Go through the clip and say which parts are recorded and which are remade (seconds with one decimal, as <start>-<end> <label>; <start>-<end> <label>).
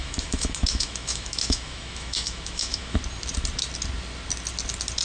0.0-3.0 remade; 3.0-5.0 recorded